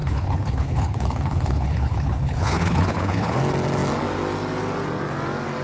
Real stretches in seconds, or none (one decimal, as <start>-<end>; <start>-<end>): 3.4-5.6